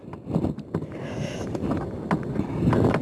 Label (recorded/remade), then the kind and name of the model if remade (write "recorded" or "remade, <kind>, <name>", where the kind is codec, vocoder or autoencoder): recorded